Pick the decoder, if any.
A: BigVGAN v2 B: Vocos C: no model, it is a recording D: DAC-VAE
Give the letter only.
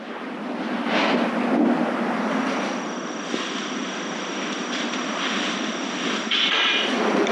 C